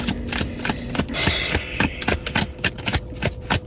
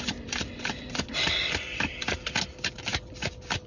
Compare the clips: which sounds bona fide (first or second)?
first